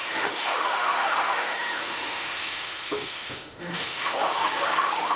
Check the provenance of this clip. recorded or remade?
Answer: remade